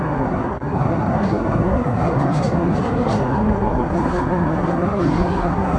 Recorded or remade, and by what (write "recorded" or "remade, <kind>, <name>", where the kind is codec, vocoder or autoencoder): remade, codec, SNAC